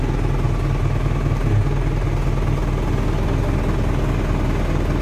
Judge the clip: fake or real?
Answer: real